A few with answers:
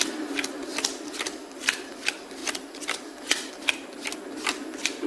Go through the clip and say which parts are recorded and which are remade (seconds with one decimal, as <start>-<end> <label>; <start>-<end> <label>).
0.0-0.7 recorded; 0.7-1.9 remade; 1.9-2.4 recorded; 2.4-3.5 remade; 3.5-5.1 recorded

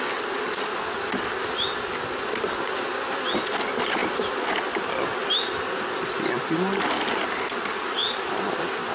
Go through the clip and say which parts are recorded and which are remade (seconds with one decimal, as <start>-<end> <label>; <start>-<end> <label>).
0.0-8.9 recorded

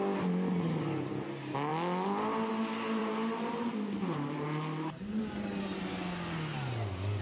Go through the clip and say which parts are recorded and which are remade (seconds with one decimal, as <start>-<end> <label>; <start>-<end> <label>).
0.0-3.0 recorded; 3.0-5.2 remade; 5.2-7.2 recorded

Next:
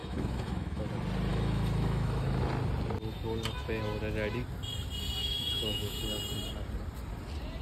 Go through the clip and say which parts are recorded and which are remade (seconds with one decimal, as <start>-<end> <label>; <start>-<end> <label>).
0.0-0.8 remade; 0.8-1.3 recorded; 1.3-2.4 remade; 2.4-5.2 recorded; 5.2-6.0 remade; 6.0-7.6 recorded

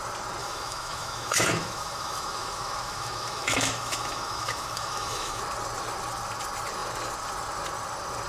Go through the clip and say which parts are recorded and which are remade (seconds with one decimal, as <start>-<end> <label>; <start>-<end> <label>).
0.0-0.4 recorded; 0.4-5.4 remade; 5.4-8.3 recorded